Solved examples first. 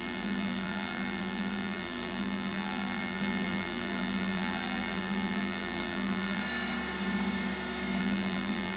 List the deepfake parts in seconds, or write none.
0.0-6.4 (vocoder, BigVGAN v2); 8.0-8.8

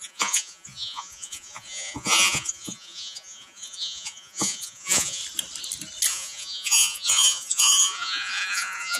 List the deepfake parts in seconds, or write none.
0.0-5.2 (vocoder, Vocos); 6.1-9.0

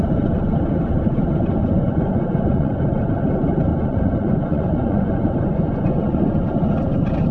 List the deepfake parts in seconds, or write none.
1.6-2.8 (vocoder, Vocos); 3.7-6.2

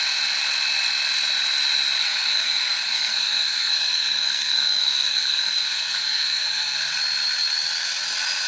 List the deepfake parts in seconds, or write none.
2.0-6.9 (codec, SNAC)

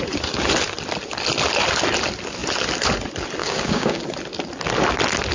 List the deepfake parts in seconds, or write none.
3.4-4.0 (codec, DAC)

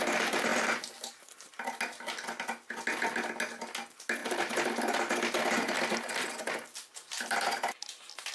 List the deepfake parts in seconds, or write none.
none

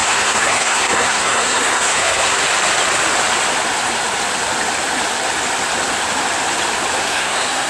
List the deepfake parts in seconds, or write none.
0.0-2.4 (codec, SNAC); 7.0-7.7